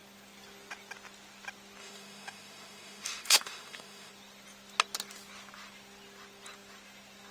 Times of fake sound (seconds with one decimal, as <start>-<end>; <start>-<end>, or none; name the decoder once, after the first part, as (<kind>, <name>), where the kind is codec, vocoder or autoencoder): 1.8-4.1 (autoencoder, DAC-VAE)